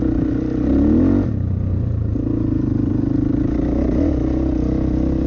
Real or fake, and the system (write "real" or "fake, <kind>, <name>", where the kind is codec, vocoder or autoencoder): real